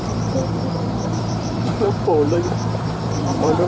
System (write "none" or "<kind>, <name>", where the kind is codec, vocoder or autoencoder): vocoder, BigVGAN v2